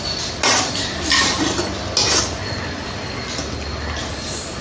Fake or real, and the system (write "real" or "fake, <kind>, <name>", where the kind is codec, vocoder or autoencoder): real